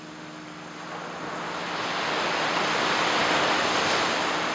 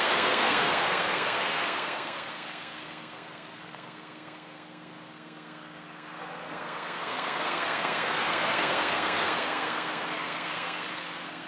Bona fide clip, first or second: first